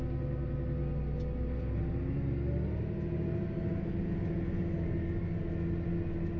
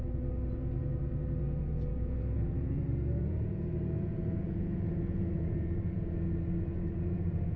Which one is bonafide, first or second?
first